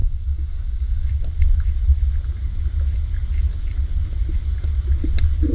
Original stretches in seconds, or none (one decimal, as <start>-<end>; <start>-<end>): 1.1-5.5